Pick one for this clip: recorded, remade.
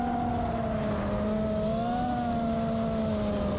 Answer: recorded